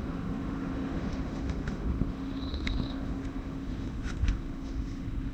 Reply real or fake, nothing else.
fake